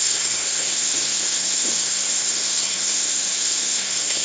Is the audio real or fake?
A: fake